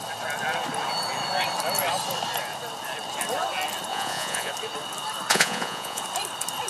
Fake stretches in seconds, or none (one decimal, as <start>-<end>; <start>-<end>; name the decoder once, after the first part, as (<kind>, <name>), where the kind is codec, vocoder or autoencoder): 3.9-4.5 (vocoder, Vocos); 5.3-6.0

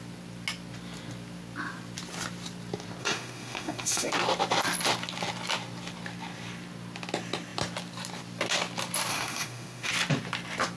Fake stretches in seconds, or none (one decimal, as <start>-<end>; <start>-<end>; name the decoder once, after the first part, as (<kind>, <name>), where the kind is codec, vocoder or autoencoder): 3.0-4.1 (autoencoder, DAC-VAE); 9.1-9.9

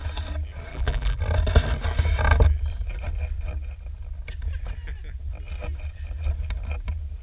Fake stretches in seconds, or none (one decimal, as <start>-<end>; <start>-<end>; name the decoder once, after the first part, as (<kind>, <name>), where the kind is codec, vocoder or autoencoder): 0.7-1.2 (vocoder, BigVGAN v2)